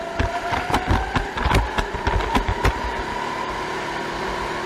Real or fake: real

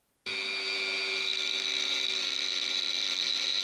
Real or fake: real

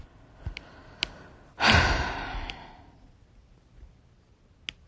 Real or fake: real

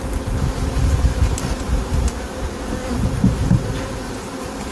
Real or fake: real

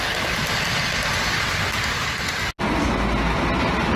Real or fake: real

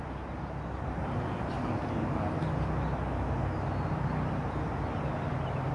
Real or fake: real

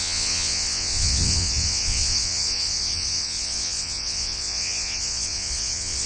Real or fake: fake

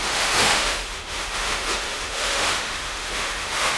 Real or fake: fake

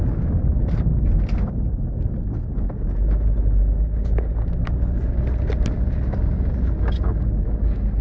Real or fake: real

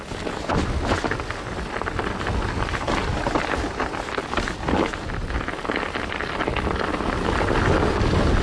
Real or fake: real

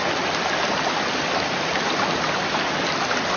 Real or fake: real